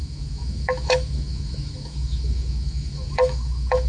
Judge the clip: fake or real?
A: fake